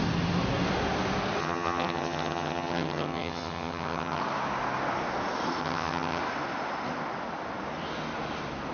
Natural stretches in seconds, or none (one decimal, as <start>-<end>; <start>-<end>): 0.0-1.4; 4.2-5.6; 6.2-8.7

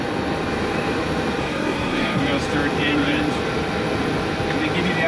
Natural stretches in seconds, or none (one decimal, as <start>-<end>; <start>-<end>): 0.0-1.4; 2.2-5.1

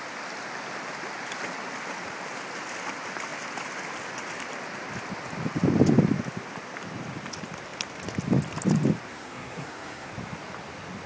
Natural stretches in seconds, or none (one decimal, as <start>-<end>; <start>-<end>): 0.0-9.1; 10.1-11.1